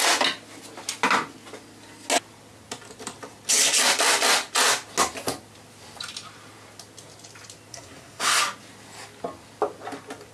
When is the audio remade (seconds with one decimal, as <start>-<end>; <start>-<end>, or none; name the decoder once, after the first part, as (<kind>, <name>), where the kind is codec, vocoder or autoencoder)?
7.7-8.4 (codec, SNAC)